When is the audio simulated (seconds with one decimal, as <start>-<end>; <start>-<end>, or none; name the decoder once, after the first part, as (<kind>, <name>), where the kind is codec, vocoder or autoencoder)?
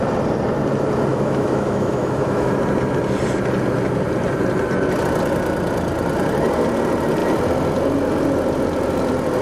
1.1-2.5 (autoencoder, DAC-VAE)